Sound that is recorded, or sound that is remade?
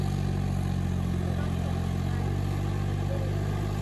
recorded